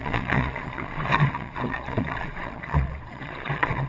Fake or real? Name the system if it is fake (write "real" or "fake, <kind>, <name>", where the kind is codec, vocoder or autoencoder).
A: fake, vocoder, Vocos